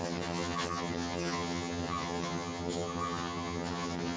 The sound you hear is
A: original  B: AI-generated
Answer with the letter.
B